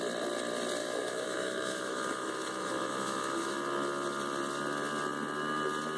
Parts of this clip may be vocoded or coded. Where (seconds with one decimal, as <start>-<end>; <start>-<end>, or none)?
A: 0.8-3.6